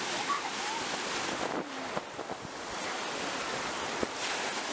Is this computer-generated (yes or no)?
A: no